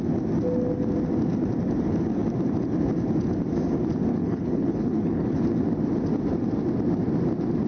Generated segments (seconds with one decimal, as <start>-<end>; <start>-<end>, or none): 4.1-5.4